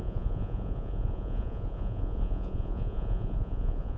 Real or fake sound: fake